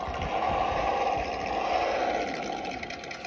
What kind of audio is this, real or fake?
real